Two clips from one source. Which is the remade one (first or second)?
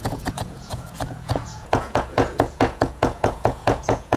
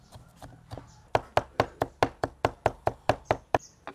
first